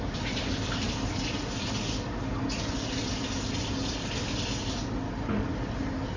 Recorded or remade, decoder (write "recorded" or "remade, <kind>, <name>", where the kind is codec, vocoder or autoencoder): recorded